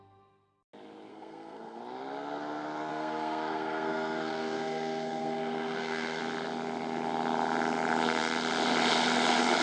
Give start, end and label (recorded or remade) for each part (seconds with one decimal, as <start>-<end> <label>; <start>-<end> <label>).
0.0-1.1 recorded; 1.1-1.8 remade; 1.8-2.9 recorded; 2.9-6.2 remade; 6.2-9.6 recorded